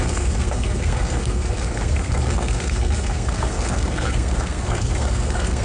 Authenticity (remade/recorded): remade